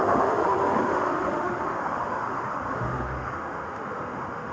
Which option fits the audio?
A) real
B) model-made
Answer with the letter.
B